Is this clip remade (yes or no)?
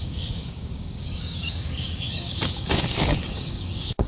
yes